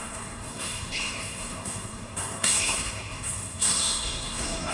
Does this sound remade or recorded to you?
remade